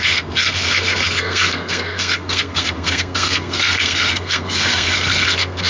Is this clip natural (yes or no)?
no